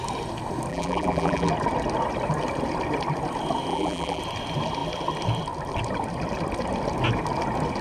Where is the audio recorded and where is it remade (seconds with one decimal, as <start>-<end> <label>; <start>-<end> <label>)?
0.0-0.7 recorded; 0.7-1.5 remade; 1.5-3.7 recorded; 3.7-4.2 remade; 4.2-7.8 recorded